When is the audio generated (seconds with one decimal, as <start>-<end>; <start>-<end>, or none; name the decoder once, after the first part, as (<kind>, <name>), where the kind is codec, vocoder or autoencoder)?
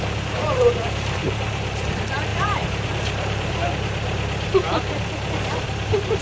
0.0-4.5 (vocoder, BigVGAN v2); 5.4-6.2